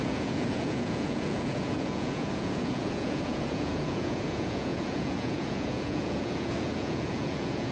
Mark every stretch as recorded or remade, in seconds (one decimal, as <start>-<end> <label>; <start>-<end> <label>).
0.0-7.7 remade

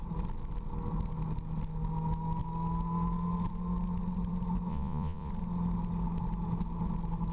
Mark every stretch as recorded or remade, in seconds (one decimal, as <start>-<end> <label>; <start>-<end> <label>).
0.0-4.7 recorded; 4.7-5.3 remade; 5.3-7.3 recorded

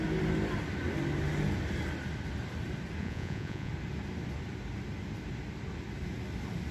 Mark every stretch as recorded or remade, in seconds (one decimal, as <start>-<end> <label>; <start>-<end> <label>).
0.0-3.0 recorded; 3.0-3.7 remade; 3.7-6.7 recorded

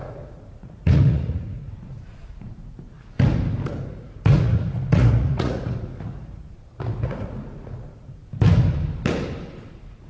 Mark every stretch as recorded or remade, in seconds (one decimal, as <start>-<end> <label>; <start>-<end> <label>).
0.0-2.6 remade; 2.6-3.9 recorded; 3.9-8.2 remade; 8.2-9.7 recorded; 9.7-10.1 remade

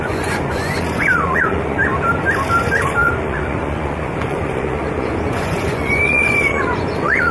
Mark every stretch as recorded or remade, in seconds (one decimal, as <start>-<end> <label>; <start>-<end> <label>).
0.0-1.9 remade; 1.9-2.6 recorded; 2.6-7.3 remade